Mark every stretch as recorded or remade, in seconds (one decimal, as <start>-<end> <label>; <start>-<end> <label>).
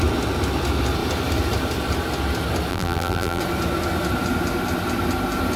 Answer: 0.0-2.7 recorded; 2.7-3.4 remade; 3.4-5.6 recorded